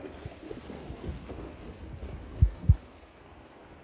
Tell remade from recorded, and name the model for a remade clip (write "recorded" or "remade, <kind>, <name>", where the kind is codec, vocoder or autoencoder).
remade, codec, SNAC